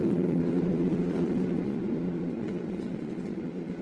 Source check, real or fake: fake